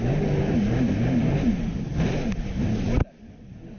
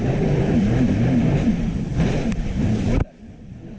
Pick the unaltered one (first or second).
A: first